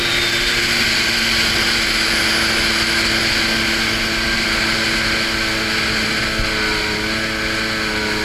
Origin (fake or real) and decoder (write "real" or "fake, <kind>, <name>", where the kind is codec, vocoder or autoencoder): real